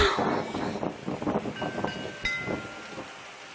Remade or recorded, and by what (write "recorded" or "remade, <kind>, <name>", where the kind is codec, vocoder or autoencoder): recorded